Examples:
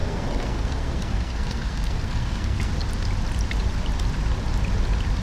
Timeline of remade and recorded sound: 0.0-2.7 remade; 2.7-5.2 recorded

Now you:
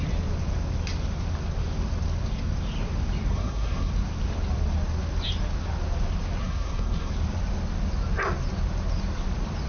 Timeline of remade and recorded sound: 0.0-3.3 recorded; 3.3-3.9 remade; 3.9-6.4 recorded; 6.4-7.1 remade; 7.1-9.7 recorded

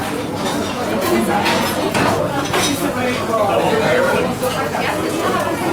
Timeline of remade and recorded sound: 0.0-0.7 recorded; 0.7-2.8 remade; 2.8-3.8 recorded; 3.8-5.7 remade

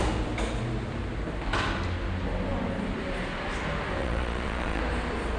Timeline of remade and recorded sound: 0.0-4.0 recorded; 4.0-4.8 remade; 4.8-5.4 recorded